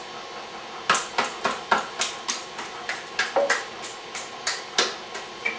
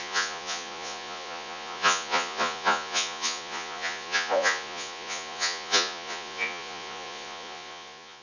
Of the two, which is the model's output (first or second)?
second